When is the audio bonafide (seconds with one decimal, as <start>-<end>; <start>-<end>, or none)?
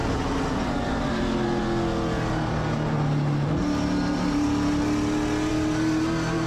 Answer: 0.0-6.5